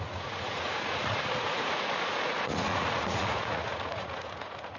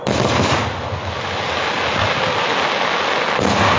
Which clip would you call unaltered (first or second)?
second